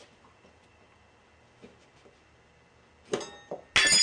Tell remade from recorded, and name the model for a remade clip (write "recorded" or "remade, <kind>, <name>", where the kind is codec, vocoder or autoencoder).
recorded